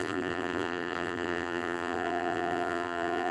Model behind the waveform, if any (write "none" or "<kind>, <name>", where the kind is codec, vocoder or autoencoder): vocoder, BigVGAN v2